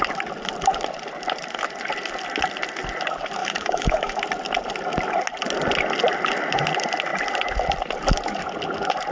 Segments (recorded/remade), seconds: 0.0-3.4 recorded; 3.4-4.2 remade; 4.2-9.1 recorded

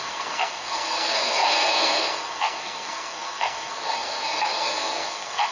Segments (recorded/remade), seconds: 0.0-5.5 remade

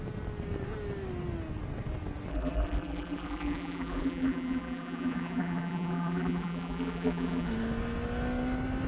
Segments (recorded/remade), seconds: 0.0-2.3 recorded; 2.3-7.5 remade; 7.5-8.9 recorded

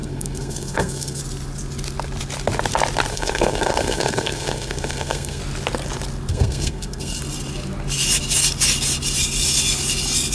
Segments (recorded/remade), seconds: 0.0-1.2 remade; 1.2-3.1 recorded; 3.1-5.4 remade; 5.4-6.3 recorded; 6.3-7.2 remade; 7.2-10.3 recorded